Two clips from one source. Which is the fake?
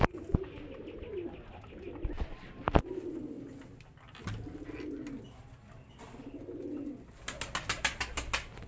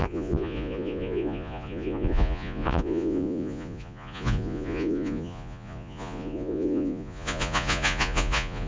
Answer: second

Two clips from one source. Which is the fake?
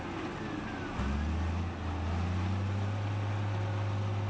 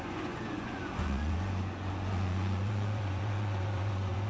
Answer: second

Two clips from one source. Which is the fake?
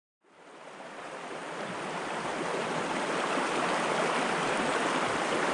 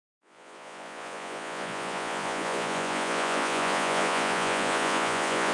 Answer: second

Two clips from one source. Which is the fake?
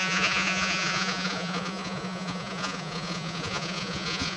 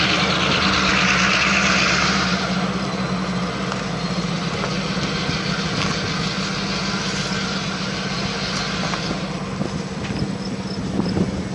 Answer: first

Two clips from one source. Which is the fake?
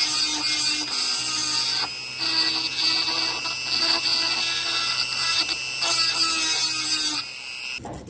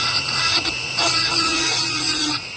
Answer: second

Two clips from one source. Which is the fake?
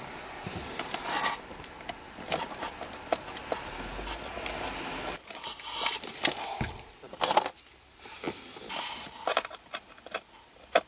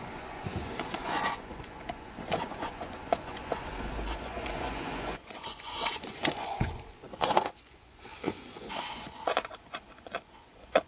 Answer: second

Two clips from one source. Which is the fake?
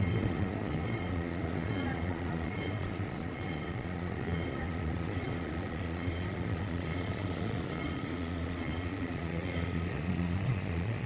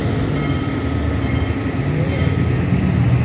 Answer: first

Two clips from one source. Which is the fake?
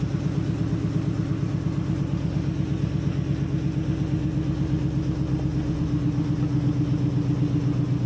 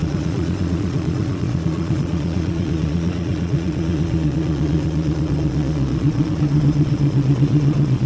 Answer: second